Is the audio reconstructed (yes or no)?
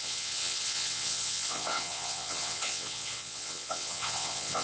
yes